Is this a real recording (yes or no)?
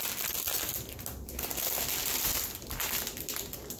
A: yes